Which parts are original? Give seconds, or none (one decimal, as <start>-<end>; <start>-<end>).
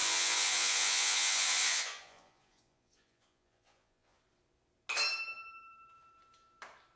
4.2-7.0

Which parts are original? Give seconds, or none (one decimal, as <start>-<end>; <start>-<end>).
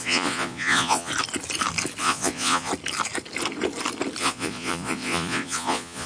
1.1-2.0; 2.7-4.2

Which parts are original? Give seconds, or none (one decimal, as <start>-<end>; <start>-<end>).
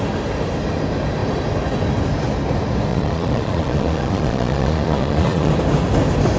0.0-2.9; 5.5-6.4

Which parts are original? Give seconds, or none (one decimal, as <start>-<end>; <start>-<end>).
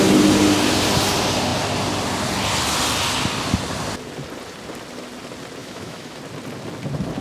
0.0-5.6; 6.2-7.2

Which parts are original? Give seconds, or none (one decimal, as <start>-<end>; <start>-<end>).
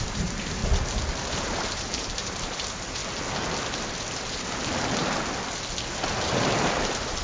0.6-1.3; 3.0-6.7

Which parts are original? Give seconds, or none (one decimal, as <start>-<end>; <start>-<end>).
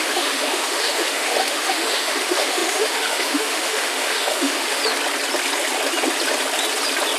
4.8-7.2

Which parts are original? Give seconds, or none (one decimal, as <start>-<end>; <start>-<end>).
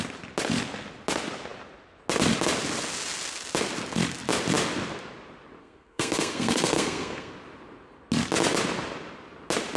0.0-5.6; 7.3-9.8